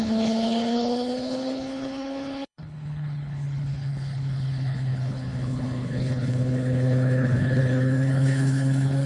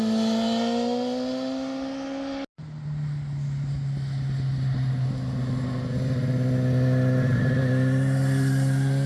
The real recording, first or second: second